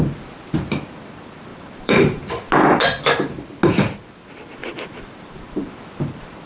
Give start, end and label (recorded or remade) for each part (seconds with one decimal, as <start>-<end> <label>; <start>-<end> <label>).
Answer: 0.0-1.5 recorded; 1.5-2.2 remade; 2.2-4.6 recorded; 4.6-6.5 remade